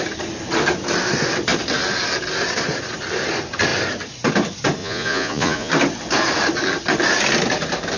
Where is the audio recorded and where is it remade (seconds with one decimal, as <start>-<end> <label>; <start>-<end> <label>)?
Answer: 0.0-4.8 recorded; 4.8-5.7 remade; 5.7-8.0 recorded